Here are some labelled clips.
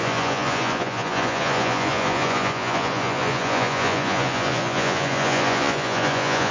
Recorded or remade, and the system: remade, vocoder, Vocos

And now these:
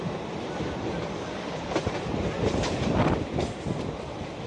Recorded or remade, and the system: remade, vocoder, BigVGAN v2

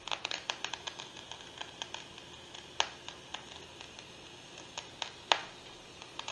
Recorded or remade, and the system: recorded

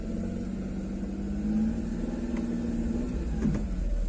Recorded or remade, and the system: recorded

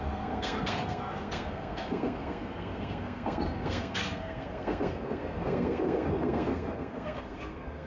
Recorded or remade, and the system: remade, codec, SNAC